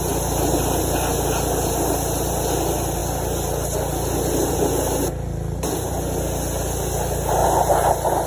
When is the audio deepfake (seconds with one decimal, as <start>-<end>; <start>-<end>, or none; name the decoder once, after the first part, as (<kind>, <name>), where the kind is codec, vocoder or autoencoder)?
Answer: none